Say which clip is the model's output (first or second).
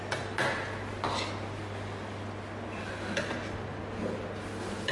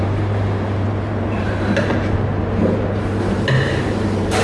second